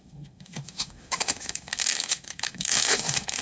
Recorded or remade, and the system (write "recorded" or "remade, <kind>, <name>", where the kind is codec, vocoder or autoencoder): remade, autoencoder, DAC-VAE